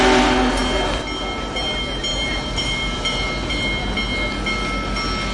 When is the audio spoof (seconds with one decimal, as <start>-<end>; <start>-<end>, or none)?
2.1-3.5